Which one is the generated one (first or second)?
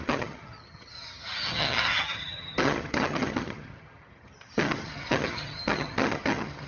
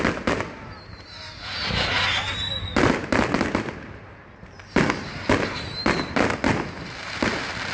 first